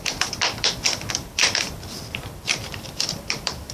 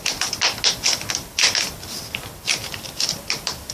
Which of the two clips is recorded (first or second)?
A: second